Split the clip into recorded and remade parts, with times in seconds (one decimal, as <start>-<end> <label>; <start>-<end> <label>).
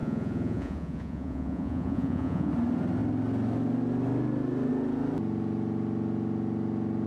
0.0-2.5 remade; 2.5-7.1 recorded